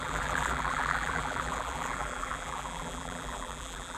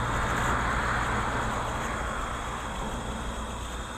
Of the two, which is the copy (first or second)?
first